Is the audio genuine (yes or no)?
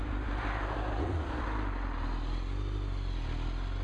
yes